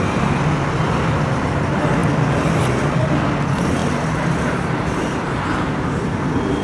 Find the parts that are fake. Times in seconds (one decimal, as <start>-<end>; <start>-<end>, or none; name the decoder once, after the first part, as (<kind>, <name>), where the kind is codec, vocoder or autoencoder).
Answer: 3.8-5.9 (vocoder, BigVGAN v2)